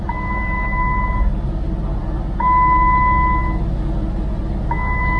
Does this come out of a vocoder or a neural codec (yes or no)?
no